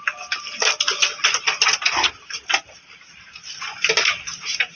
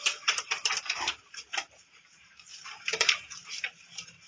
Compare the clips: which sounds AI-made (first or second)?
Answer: second